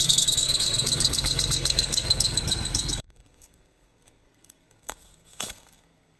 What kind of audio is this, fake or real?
fake